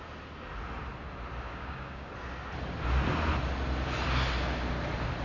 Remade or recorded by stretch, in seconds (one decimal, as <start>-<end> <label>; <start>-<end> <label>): 0.0-1.5 recorded; 1.5-2.1 remade; 2.1-5.2 recorded